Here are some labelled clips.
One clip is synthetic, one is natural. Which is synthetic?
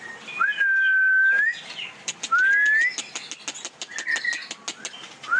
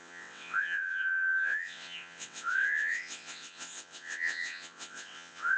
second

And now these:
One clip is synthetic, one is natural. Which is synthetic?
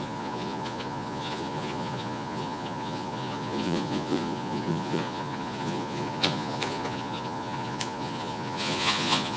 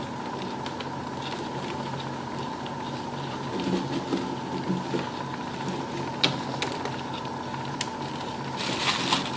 first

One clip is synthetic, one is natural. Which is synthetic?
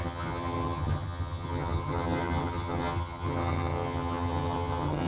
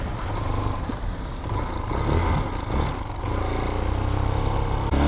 first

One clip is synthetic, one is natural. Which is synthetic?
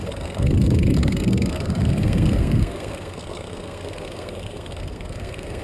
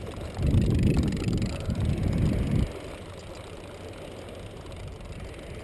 first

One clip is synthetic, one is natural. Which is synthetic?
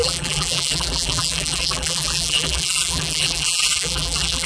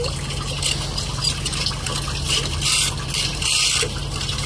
first